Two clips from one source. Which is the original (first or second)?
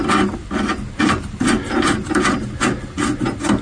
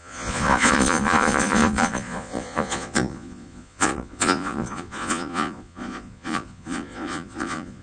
first